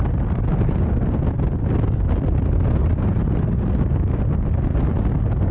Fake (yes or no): no